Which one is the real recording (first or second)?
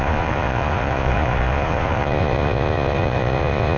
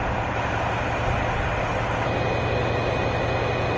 second